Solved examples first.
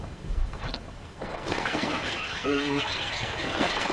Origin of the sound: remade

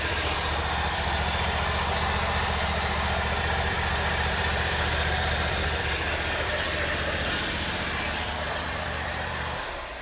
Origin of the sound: remade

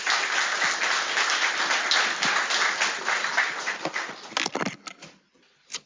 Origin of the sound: recorded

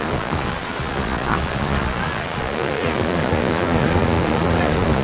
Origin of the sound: remade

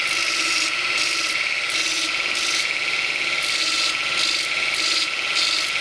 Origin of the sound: recorded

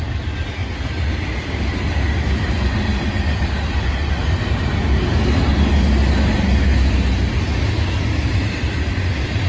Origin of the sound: recorded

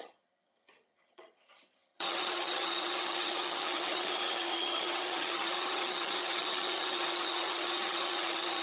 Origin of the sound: remade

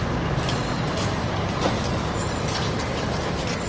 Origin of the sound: recorded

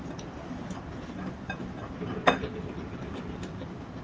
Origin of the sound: recorded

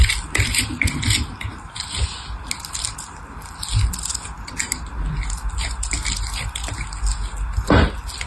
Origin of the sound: recorded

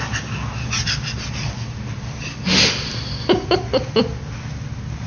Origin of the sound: recorded